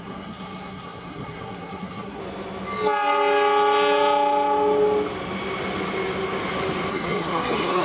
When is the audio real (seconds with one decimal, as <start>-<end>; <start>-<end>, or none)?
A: 2.2-6.9